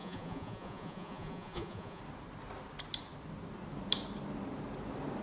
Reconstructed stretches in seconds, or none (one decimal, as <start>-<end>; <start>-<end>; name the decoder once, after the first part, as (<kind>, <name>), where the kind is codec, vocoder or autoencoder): 0.0-2.0 (vocoder, Vocos)